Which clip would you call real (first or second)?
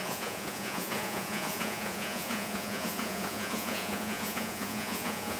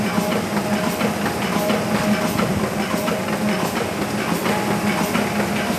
second